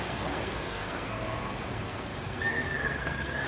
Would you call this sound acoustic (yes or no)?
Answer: no